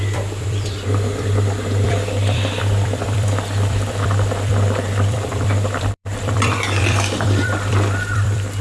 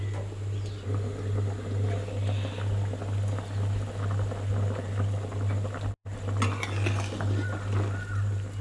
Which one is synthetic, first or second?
first